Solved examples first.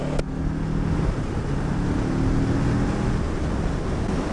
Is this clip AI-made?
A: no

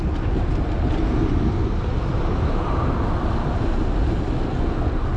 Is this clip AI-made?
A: no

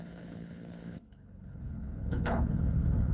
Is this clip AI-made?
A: yes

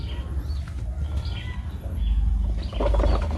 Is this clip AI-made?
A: no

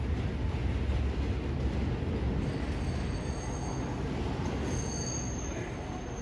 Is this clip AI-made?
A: no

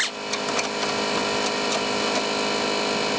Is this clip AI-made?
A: no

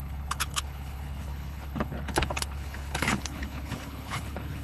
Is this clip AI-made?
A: yes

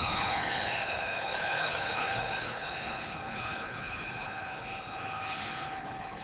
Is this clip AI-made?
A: yes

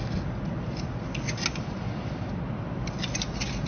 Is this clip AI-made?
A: no